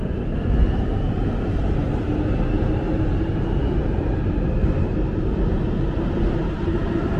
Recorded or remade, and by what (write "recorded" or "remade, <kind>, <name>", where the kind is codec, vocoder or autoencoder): recorded